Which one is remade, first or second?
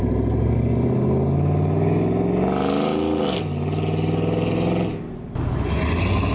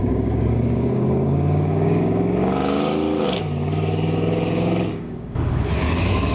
second